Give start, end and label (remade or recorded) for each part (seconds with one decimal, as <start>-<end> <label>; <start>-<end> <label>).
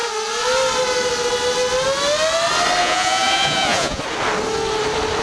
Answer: 0.0-2.8 recorded; 2.8-4.0 remade; 4.0-5.2 recorded